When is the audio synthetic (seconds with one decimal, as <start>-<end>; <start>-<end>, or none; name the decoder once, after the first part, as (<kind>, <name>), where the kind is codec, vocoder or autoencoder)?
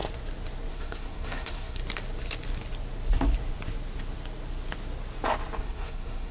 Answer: 0.7-1.8 (codec, SNAC); 5.6-6.3